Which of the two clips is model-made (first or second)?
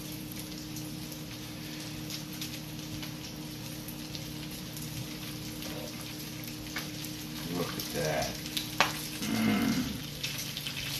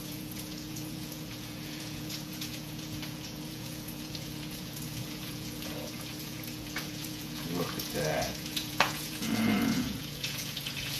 second